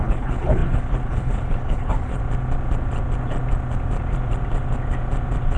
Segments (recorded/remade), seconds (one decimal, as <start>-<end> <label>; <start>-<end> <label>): 0.0-2.2 remade; 2.2-5.6 recorded